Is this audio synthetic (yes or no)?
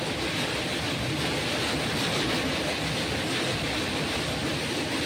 no